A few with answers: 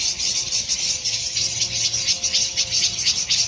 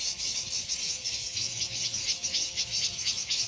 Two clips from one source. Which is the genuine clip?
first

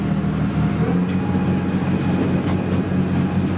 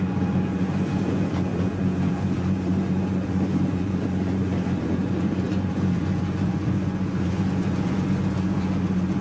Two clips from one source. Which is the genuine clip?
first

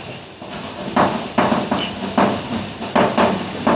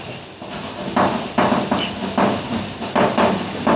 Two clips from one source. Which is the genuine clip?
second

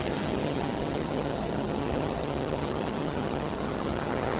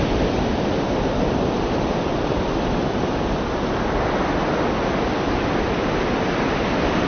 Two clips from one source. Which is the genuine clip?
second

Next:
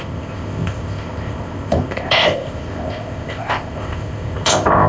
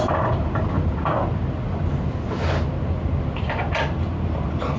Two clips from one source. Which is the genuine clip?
second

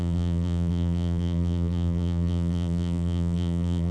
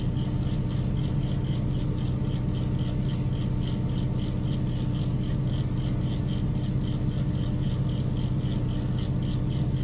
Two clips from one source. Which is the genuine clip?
second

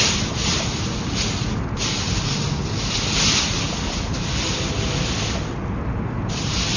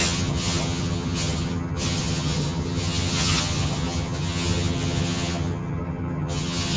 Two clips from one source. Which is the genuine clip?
first